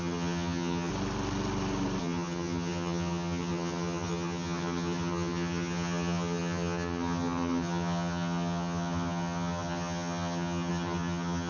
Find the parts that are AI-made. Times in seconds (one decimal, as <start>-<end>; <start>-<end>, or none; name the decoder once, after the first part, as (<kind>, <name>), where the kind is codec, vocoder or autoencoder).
0.0-0.9 (vocoder, HiFi-GAN); 2.0-11.5